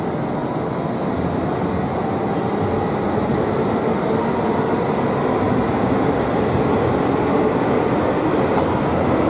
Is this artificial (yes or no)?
no